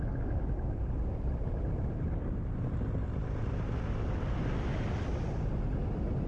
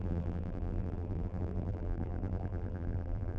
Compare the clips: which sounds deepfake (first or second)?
second